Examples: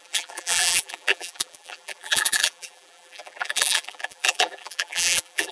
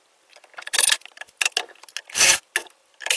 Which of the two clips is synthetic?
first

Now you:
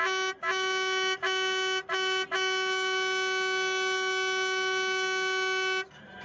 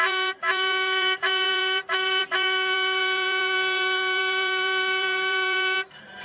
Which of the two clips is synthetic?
second